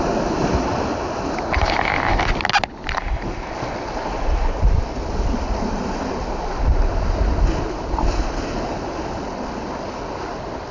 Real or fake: real